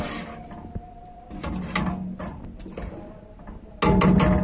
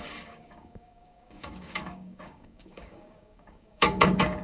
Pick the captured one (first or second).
first